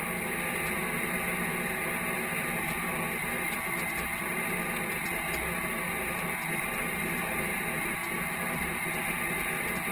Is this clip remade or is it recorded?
recorded